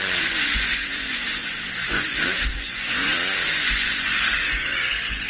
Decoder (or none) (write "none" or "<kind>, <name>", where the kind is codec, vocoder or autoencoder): vocoder, Vocos